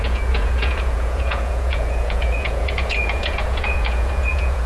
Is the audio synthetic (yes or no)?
yes